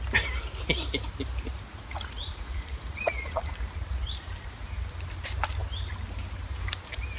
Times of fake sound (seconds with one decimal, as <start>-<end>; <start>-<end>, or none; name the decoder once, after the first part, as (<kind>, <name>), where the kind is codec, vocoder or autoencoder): 1.7-3.5 (vocoder, Vocos)